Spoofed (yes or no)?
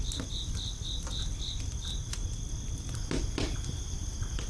no